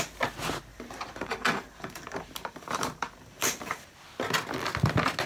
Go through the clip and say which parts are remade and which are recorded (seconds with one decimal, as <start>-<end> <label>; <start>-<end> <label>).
0.0-0.7 recorded; 0.7-3.9 remade; 3.9-5.3 recorded